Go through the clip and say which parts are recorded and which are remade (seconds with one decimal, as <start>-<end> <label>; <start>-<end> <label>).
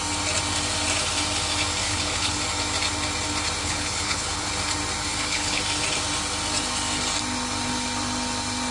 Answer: 0.0-1.8 recorded; 1.8-2.4 remade; 2.4-3.6 recorded; 3.6-4.5 remade; 4.5-5.0 recorded; 5.0-5.6 remade; 5.6-8.7 recorded